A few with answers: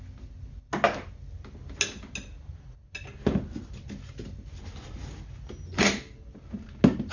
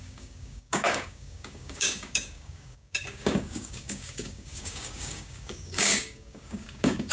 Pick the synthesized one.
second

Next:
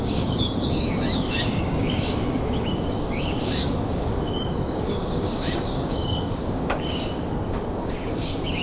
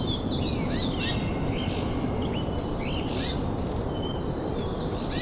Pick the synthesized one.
first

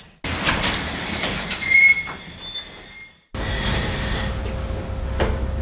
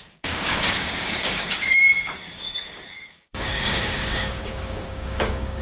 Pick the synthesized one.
second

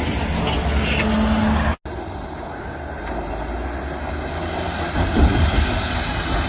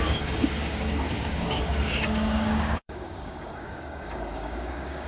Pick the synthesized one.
second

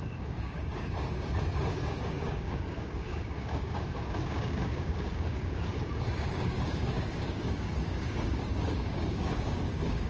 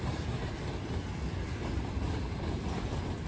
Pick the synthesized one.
first